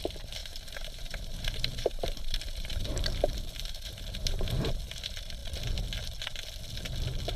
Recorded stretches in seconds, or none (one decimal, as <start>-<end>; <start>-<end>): 0.0-0.4; 4.8-7.4